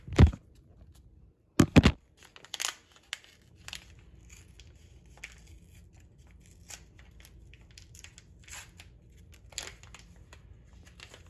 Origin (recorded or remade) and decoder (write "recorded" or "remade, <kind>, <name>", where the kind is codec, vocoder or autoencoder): recorded